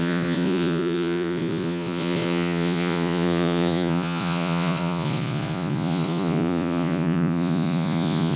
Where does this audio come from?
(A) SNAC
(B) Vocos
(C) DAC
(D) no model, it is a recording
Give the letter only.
B